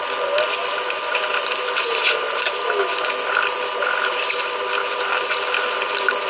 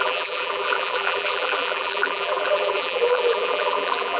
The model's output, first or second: second